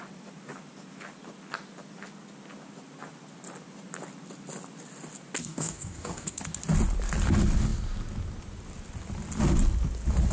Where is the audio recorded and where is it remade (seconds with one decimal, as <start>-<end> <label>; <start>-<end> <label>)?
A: 0.0-5.4 recorded; 5.4-6.4 remade; 6.4-10.3 recorded